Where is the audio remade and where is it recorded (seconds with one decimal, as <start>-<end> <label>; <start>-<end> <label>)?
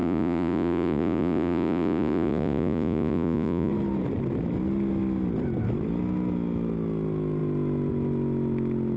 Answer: 0.0-3.7 remade; 3.7-9.0 recorded